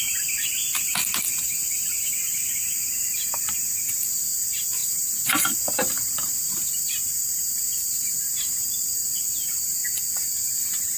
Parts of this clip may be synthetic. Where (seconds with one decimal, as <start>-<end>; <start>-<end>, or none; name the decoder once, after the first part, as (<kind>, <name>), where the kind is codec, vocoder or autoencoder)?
4.8-8.7 (vocoder, BigVGAN v2)